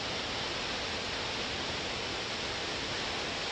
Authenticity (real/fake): real